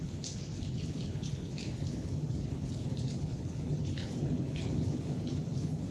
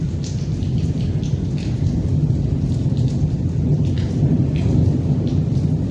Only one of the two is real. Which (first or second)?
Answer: second